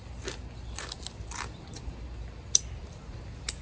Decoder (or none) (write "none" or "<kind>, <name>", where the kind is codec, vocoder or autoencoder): none